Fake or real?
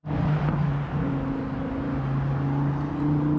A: real